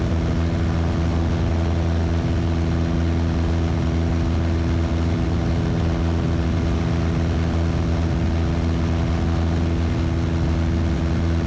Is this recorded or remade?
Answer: recorded